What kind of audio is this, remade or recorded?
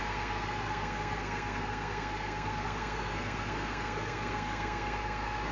remade